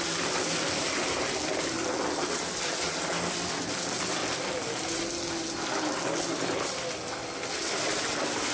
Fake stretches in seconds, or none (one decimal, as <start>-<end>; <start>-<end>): none

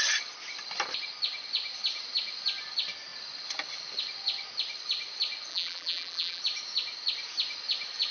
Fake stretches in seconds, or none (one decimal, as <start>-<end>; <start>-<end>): 5.5-6.4

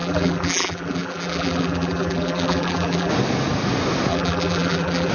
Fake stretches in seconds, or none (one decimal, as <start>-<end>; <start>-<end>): 0.0-3.1; 4.1-5.1

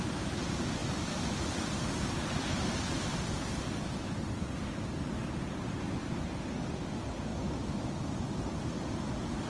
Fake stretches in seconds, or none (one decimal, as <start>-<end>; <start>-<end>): 0.8-1.8

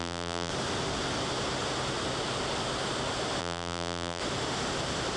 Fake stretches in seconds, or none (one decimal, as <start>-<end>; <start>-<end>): 0.0-0.5; 3.4-4.2

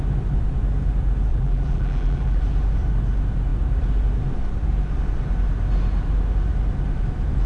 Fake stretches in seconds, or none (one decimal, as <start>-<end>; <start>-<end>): 1.3-2.4

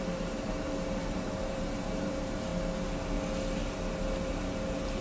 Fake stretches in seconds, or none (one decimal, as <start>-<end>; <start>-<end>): 0.0-2.5; 4.3-5.0

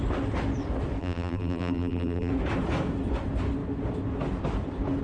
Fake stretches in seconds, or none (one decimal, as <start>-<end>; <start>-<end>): 1.0-2.3